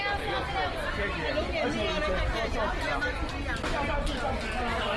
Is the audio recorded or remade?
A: recorded